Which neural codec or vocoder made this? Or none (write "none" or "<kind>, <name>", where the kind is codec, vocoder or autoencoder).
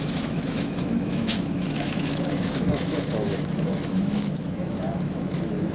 autoencoder, DAC-VAE